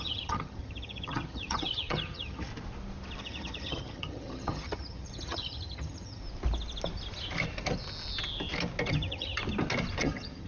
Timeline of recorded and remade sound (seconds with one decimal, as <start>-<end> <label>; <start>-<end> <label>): 0.0-2.5 remade; 2.5-3.2 recorded; 3.2-6.2 remade; 6.2-8.9 recorded; 8.9-9.4 remade; 9.4-10.0 recorded; 10.0-10.5 remade